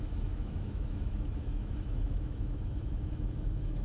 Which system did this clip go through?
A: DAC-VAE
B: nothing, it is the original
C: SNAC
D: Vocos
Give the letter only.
A